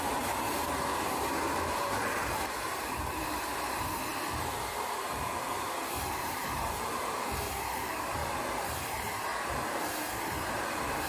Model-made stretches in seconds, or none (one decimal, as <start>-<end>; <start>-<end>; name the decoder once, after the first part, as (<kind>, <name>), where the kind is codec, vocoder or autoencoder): 0.0-8.2 (vocoder, BigVGAN v2); 8.9-9.3; 10.3-11.1